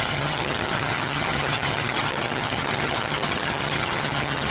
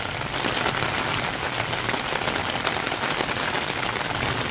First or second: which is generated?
first